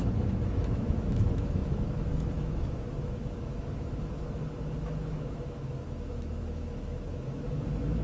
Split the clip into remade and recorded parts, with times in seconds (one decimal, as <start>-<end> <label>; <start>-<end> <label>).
0.0-8.0 remade